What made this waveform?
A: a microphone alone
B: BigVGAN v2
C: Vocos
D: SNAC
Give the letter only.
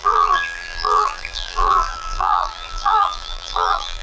B